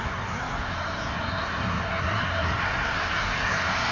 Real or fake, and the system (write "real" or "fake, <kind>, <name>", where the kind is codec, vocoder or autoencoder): fake, codec, SNAC